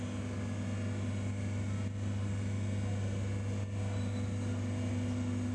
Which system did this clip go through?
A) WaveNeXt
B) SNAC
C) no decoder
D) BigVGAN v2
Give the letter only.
C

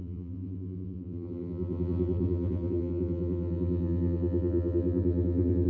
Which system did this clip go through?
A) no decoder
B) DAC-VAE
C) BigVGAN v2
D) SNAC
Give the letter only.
C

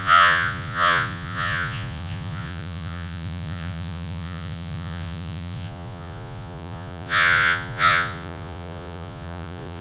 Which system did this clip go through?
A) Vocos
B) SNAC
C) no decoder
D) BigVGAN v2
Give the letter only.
A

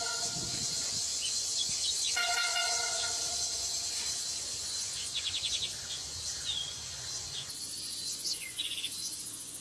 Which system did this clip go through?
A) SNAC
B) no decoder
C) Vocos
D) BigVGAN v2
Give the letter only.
C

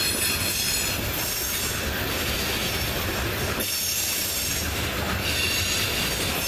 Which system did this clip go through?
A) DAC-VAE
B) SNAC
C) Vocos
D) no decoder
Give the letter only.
D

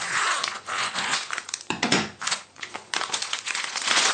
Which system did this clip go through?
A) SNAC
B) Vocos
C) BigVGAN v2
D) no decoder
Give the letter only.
B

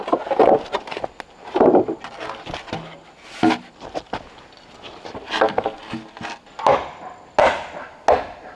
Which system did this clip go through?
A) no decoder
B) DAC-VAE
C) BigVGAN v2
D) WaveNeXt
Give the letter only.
A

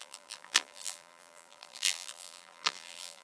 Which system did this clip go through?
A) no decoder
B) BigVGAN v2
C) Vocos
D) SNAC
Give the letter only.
B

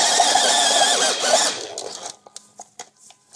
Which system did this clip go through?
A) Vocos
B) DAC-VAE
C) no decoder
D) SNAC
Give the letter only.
C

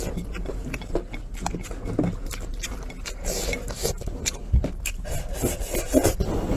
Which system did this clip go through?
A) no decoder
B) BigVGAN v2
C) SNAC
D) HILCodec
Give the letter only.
A